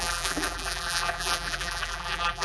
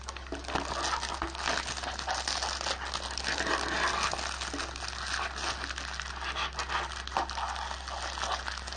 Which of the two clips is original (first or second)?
second